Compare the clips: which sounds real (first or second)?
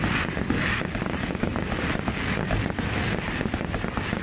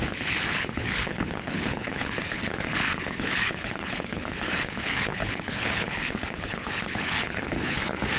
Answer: first